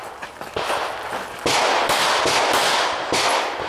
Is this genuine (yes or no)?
yes